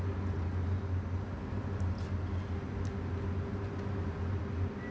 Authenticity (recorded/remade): recorded